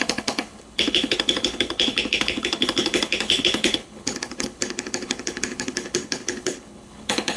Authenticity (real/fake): fake